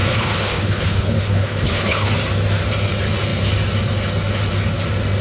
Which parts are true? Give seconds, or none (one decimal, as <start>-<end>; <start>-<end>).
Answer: 2.1-5.2